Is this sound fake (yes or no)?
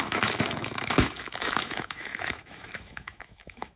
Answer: yes